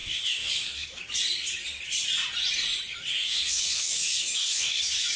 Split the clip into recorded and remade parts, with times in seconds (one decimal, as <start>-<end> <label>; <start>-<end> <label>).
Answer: 0.0-1.0 remade; 1.0-3.1 recorded; 3.1-4.8 remade; 4.8-5.2 recorded